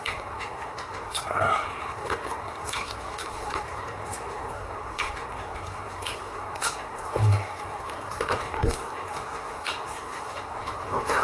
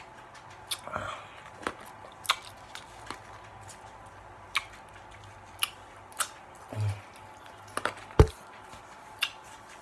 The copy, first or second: first